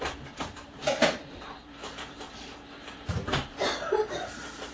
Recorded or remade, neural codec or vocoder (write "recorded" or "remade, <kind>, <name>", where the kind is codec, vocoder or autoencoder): remade, vocoder, BigVGAN v2